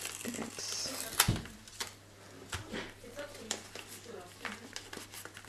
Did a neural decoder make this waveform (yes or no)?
no